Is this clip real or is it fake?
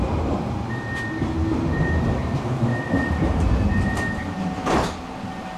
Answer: real